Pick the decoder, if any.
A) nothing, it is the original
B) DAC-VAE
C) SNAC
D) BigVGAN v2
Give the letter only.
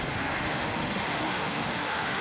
B